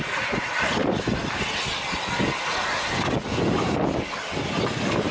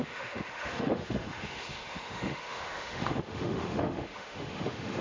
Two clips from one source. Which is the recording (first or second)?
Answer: first